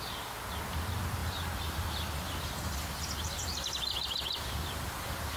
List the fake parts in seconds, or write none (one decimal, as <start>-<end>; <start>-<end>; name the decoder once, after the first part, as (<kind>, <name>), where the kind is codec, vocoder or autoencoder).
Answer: 1.2-3.0 (vocoder, BigVGAN v2); 3.4-5.4